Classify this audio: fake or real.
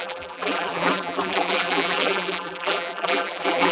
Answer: fake